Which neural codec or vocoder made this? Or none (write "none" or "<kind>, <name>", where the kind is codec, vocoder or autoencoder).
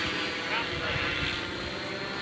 none